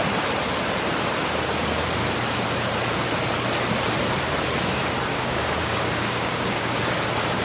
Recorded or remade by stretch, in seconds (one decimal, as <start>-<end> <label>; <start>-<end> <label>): 0.0-5.1 recorded; 5.1-6.8 remade; 6.8-7.4 recorded